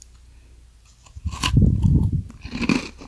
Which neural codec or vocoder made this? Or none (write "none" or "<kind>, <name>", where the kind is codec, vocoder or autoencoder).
none